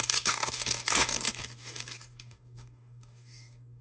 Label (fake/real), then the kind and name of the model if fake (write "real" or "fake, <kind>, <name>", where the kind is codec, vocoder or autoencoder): fake, codec, DAC